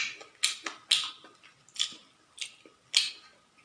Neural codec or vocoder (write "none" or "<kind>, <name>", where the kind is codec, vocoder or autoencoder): none